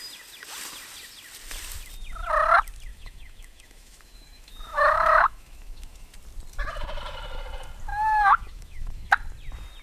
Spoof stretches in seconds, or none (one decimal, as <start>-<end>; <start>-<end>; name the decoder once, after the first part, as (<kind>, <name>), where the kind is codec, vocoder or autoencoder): 2.9-6.1 (autoencoder, DAC-VAE); 7.9-9.1